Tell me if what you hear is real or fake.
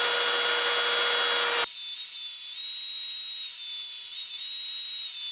real